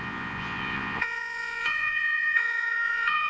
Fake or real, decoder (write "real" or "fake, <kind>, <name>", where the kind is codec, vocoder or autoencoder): fake, vocoder, Vocos